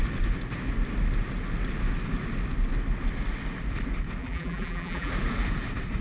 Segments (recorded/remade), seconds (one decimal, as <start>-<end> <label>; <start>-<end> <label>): 0.0-4.2 recorded; 4.2-5.1 remade; 5.1-6.0 recorded